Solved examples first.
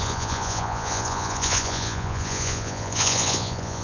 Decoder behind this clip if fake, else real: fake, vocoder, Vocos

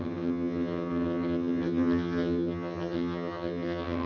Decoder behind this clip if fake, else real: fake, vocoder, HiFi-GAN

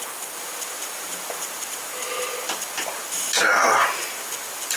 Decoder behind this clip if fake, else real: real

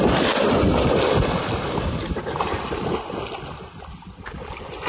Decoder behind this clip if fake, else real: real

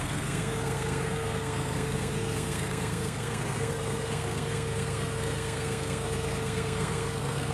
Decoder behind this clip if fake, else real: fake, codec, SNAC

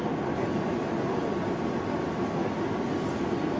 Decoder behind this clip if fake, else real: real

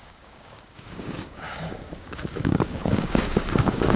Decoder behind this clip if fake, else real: fake, codec, DAC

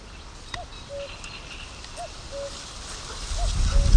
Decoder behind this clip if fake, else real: real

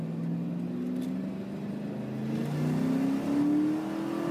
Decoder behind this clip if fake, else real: real